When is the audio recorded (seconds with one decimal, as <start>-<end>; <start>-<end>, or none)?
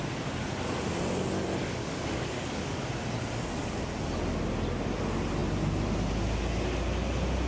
0.0-1.6; 2.9-7.5